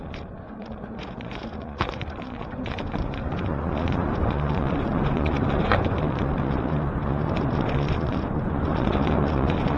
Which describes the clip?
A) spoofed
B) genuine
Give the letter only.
A